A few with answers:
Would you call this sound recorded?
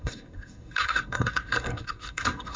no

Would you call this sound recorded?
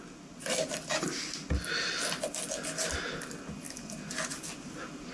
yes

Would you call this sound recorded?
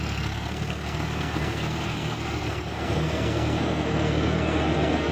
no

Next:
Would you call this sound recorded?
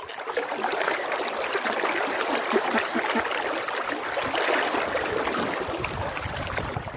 yes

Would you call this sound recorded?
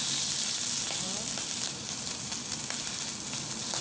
yes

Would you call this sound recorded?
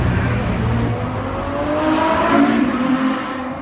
yes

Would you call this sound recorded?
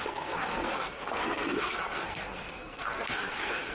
no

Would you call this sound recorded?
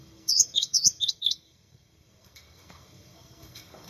no